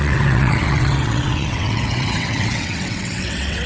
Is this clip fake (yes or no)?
yes